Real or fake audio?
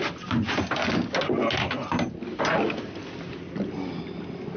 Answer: real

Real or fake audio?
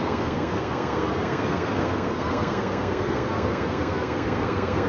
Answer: fake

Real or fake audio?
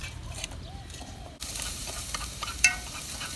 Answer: fake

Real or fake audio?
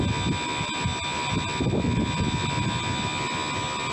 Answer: real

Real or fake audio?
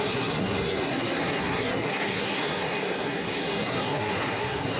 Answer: fake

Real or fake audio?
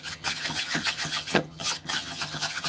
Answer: fake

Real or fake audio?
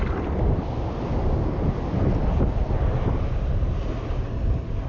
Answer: real